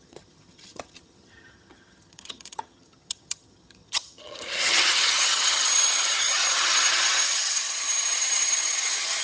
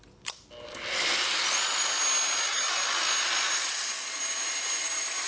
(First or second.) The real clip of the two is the second